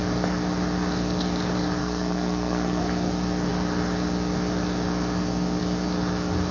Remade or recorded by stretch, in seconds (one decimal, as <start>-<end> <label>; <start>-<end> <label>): 0.0-1.8 recorded; 1.8-2.8 remade; 2.8-6.5 recorded